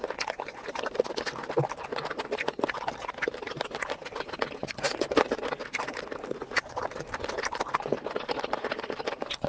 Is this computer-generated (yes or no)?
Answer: no